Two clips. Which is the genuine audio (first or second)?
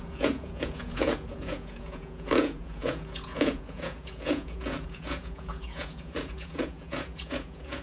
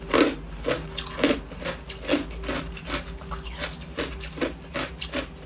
second